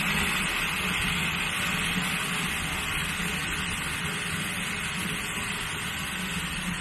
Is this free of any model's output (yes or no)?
yes